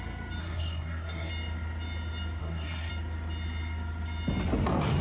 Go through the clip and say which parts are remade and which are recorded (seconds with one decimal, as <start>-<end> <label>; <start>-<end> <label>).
0.0-0.4 recorded; 0.4-1.3 remade; 1.3-2.4 recorded; 2.4-2.9 remade; 2.9-5.0 recorded